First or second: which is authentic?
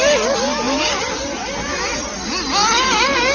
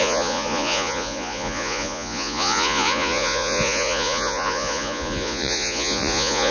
first